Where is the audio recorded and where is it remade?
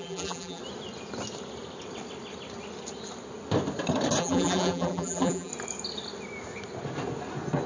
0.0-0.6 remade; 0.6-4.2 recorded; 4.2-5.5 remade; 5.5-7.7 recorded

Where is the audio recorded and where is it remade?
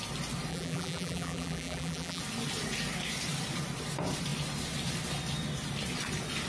0.0-0.5 recorded; 0.5-2.2 remade; 2.2-6.5 recorded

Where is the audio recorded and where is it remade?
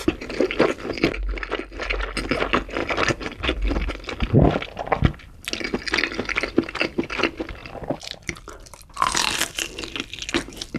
0.0-2.8 recorded; 2.8-3.9 remade; 3.9-7.6 recorded; 7.6-9.5 remade; 9.5-10.8 recorded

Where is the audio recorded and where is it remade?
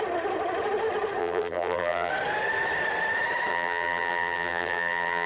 0.0-1.2 recorded; 1.2-2.1 remade; 2.1-3.5 recorded; 3.5-5.3 remade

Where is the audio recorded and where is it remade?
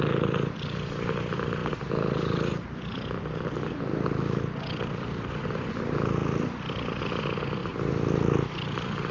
0.0-9.1 remade